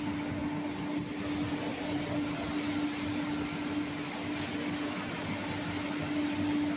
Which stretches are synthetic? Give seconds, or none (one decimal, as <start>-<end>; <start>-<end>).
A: none